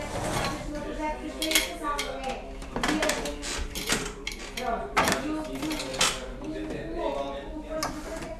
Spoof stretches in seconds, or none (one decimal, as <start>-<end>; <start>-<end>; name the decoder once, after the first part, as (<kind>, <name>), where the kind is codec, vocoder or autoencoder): none

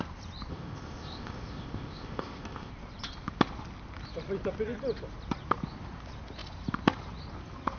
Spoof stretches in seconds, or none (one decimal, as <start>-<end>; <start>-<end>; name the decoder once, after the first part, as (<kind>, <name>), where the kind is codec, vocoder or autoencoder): 0.5-2.7 (codec, ZipCodec)

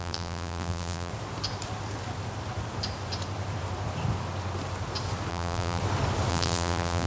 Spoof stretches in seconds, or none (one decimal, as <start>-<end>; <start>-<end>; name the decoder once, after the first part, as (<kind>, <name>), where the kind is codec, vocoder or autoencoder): 0.0-1.1 (vocoder, BigVGAN v2); 5.3-5.8; 6.3-7.1

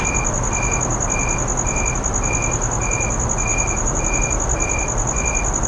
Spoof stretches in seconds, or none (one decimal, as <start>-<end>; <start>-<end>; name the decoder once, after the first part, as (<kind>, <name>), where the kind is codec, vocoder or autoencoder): 3.5-4.2 (vocoder, BigVGAN v2)

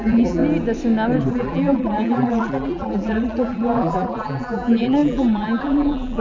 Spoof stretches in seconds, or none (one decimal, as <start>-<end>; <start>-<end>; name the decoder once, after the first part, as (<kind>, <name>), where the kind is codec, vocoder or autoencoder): 0.0-0.4 (vocoder, BigVGAN v2); 1.3-6.2

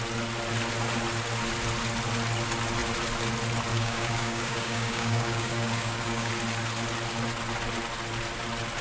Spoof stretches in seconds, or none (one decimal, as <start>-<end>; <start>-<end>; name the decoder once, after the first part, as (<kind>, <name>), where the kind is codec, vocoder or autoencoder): 3.7-6.3 (codec, DAC)

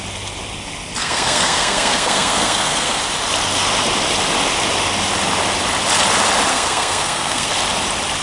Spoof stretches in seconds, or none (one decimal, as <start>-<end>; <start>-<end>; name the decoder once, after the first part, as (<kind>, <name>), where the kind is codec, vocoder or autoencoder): 1.0-3.0 (codec, SNAC); 6.5-7.5